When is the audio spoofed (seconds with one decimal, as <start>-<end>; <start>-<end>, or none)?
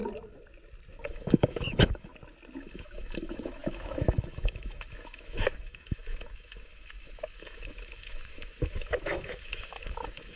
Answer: 1.0-2.1; 2.6-10.4